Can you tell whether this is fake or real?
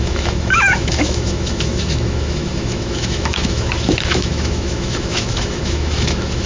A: fake